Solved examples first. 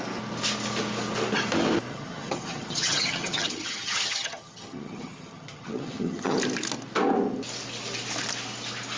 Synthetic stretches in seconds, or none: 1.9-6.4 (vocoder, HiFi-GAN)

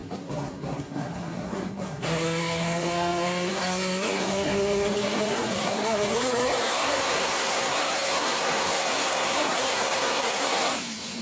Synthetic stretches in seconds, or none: 0.0-11.2 (codec, SNAC)

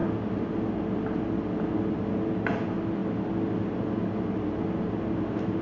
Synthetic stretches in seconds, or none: none

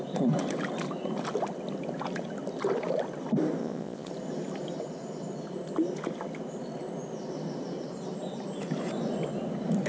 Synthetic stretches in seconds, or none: 3.6-4.1 (vocoder, Vocos)

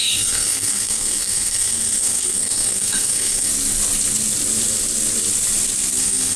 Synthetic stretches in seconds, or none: 0.0-3.5 (codec, SNAC); 6.0-6.4